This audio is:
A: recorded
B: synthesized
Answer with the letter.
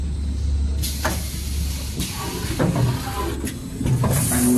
A